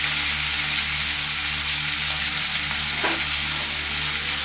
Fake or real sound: real